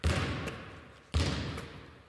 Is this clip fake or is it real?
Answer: real